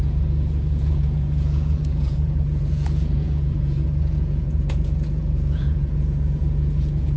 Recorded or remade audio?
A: remade